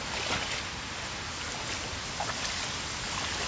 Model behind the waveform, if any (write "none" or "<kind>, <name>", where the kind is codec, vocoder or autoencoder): none